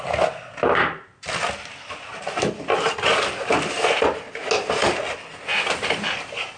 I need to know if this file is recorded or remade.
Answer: recorded